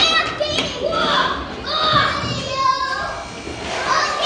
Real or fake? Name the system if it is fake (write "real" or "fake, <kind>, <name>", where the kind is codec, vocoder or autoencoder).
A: real